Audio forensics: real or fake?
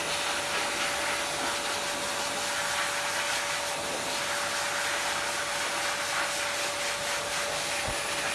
real